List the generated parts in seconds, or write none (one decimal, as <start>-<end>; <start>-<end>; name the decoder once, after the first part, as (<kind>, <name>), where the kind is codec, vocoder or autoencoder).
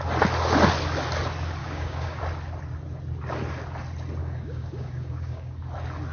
1.6-2.2 (codec, DAC); 4.2-5.6